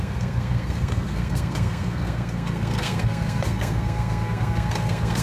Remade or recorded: remade